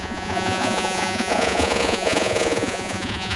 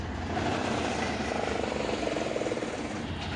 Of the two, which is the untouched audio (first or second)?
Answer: second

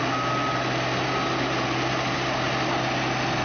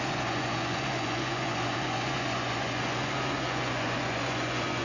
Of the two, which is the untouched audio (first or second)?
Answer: first